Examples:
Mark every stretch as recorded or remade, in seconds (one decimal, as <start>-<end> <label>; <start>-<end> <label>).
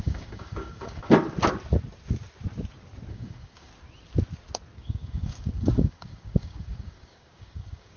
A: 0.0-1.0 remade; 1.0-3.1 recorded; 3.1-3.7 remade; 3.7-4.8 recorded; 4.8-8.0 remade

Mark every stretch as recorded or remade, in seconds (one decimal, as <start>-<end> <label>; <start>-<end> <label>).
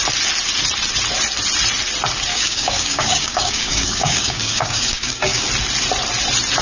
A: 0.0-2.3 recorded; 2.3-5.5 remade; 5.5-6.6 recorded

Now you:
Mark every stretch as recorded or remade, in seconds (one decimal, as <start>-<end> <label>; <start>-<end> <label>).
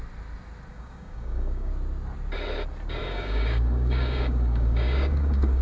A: 0.0-0.7 recorded; 0.7-1.7 remade; 1.7-3.0 recorded; 3.0-5.6 remade